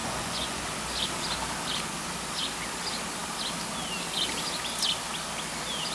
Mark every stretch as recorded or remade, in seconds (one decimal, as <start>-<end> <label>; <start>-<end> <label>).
0.0-0.6 remade; 0.6-5.9 recorded